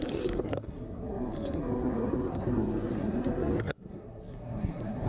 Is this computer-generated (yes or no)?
yes